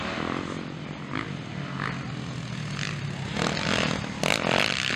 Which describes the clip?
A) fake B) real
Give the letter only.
B